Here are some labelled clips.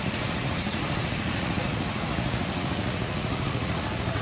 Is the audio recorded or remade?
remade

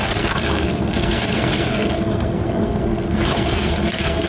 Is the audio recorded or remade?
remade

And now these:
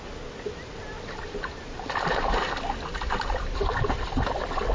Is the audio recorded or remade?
recorded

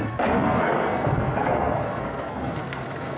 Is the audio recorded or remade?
remade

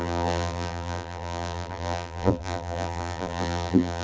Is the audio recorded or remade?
remade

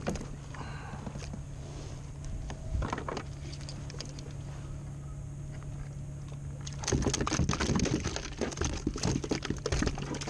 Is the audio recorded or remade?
recorded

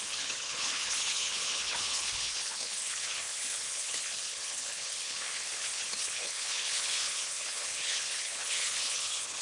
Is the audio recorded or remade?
remade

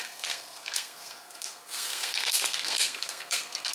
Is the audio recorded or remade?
remade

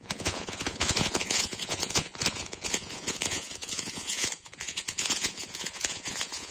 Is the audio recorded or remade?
remade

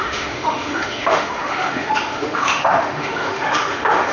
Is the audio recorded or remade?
remade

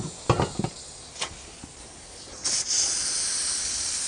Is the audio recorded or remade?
recorded